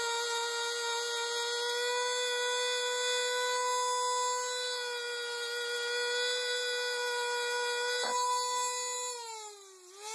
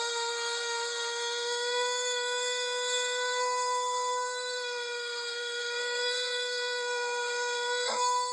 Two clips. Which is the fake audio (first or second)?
second